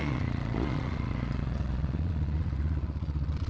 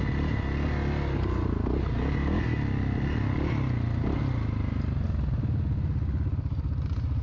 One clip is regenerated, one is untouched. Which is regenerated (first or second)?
first